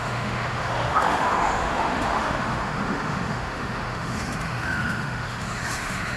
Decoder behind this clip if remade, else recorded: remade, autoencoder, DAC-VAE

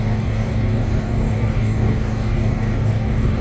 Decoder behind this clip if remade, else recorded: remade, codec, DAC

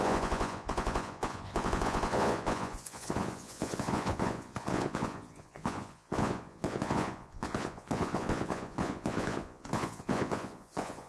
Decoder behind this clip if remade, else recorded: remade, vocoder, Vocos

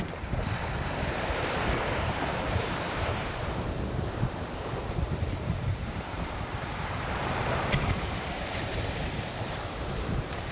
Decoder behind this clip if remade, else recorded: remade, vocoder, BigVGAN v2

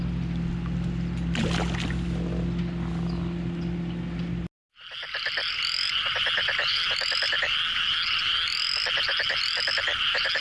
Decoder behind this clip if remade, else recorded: recorded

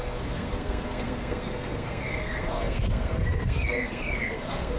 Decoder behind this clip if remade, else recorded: remade, codec, SNAC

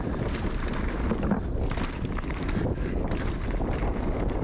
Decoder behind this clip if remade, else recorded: recorded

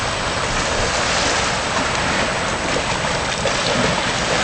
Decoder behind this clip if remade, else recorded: recorded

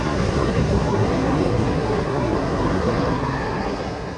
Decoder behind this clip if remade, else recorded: remade, codec, SNAC